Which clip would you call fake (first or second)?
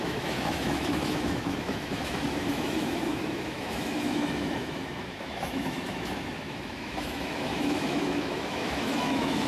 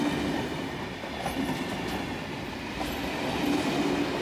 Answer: first